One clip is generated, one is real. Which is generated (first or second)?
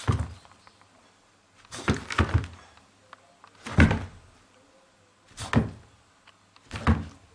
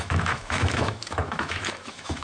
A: second